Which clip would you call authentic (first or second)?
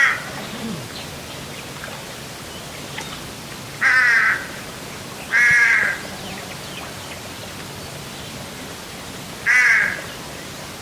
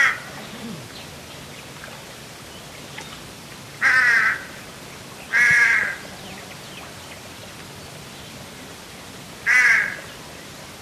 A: first